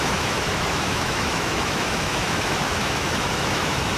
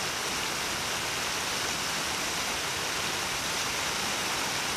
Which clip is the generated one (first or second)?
first